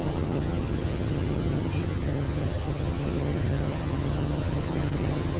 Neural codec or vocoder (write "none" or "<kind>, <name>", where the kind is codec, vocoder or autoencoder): vocoder, HiFi-GAN